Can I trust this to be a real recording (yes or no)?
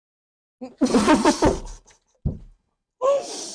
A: yes